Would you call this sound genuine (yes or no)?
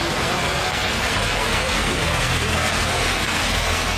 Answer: no